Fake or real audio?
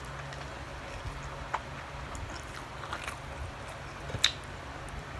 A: real